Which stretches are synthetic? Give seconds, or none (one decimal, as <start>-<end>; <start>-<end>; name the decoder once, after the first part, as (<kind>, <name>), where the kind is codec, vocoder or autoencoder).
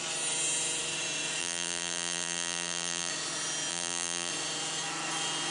1.4-3.1 (vocoder, BigVGAN v2); 3.7-4.3